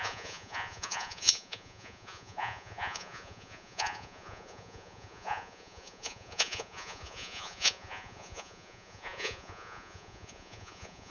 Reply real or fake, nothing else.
fake